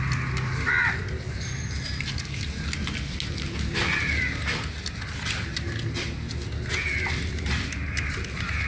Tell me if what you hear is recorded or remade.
recorded